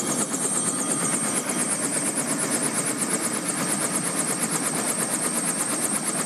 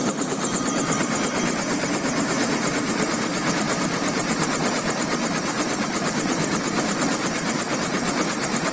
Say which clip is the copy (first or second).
second